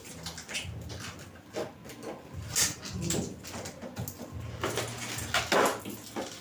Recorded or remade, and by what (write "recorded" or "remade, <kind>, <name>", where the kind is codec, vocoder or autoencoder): recorded